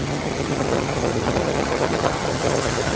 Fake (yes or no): yes